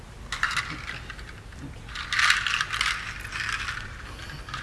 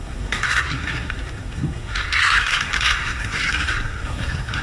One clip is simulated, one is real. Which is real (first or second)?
first